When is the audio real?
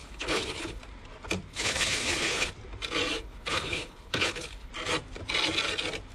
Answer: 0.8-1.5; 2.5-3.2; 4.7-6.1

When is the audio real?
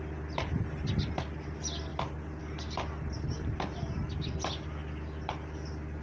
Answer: 0.0-6.0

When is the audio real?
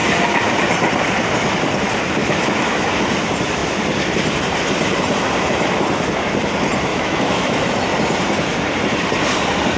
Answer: 0.0-2.2; 2.9-6.9; 7.6-9.8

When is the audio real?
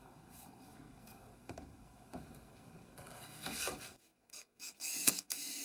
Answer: none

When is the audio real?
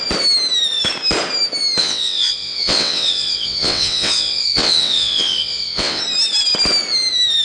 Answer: 0.0-1.8; 6.0-7.4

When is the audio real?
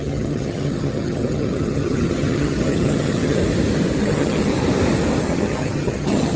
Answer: 3.4-4.0; 4.5-5.2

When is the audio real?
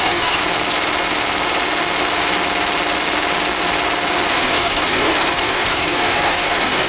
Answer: 0.4-4.3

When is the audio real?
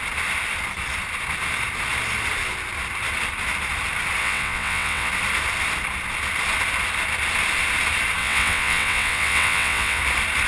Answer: 0.0-4.2; 5.1-8.2; 10.0-10.5